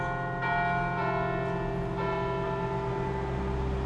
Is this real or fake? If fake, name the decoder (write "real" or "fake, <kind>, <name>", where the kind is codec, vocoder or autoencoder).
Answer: real